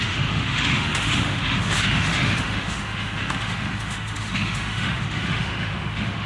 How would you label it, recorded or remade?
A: remade